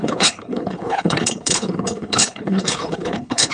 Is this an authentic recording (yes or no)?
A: no